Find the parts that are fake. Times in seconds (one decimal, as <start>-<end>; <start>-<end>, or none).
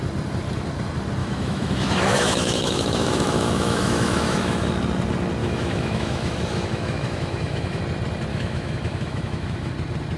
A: 1.2-4.7; 5.4-7.8; 8.3-9.7